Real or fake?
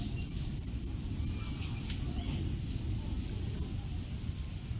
real